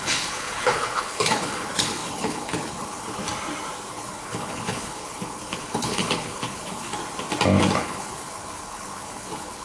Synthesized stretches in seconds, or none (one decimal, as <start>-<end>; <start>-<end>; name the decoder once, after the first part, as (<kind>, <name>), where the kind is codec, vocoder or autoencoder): 0.0-3.2 (codec, HILCodec); 3.9-6.9; 7.8-9.6